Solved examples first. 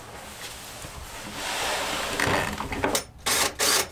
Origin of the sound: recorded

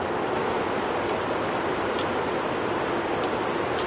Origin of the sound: recorded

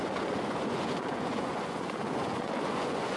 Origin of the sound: remade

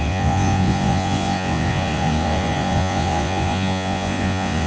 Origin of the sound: remade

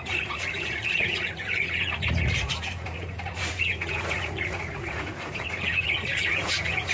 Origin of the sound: remade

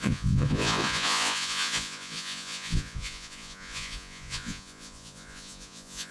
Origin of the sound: remade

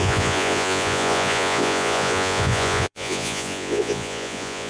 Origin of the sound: remade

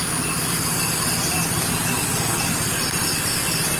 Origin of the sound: recorded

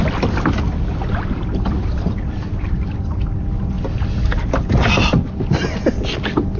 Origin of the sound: recorded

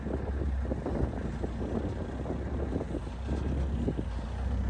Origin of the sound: recorded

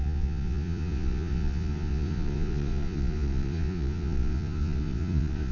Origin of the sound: remade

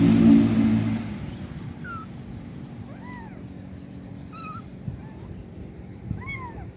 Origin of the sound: recorded